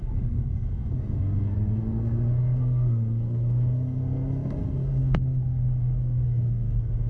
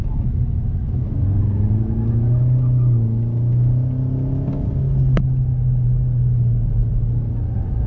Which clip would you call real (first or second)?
second